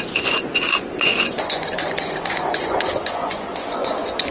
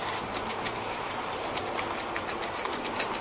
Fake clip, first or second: first